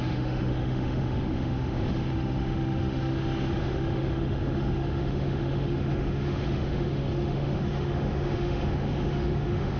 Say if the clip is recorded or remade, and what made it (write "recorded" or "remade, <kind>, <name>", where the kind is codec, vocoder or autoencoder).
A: remade, autoencoder, DAC-VAE